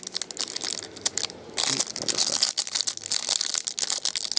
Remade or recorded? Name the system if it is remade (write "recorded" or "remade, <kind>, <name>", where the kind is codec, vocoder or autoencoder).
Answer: recorded